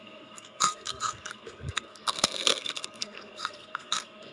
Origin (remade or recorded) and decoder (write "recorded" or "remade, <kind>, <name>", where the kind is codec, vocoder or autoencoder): remade, codec, SNAC